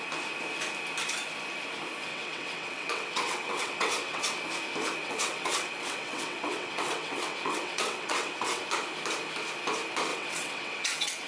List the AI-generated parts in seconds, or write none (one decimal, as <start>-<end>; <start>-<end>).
2.1-4.4; 5.0-8.6; 10.1-11.3